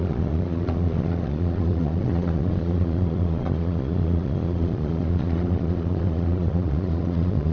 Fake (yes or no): yes